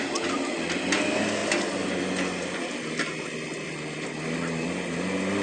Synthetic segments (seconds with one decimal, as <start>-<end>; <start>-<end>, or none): none